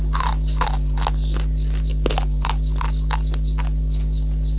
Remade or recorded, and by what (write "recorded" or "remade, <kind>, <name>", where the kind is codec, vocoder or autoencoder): recorded